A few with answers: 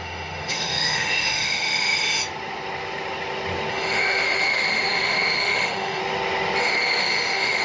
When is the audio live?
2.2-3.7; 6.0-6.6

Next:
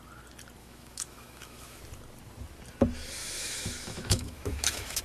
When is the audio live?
0.0-0.6; 1.8-3.2

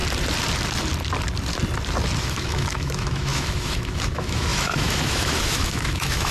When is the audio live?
0.0-2.2

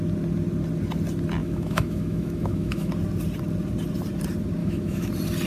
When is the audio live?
0.0-1.4; 2.9-4.6; 5.1-5.5

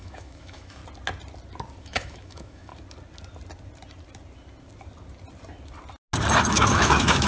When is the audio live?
0.8-1.8; 2.7-6.5

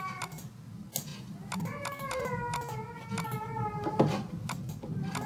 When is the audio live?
0.0-5.3

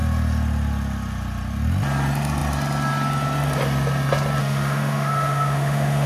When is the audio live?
0.0-4.4